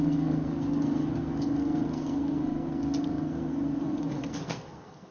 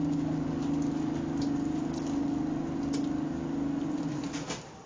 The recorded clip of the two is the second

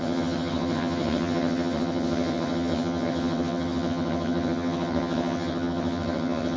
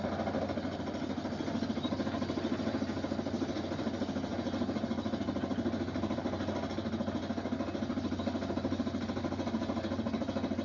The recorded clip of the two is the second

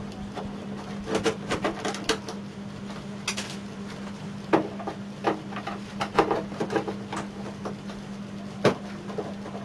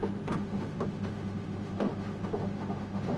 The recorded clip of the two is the first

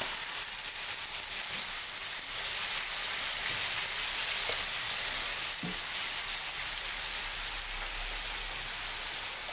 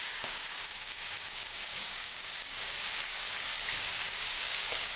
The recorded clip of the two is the first